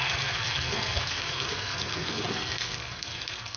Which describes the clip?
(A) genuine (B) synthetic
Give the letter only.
B